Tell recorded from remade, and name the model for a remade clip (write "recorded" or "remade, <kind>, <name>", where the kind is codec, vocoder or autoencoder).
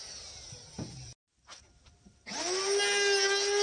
recorded